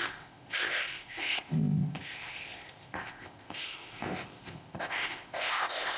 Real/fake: fake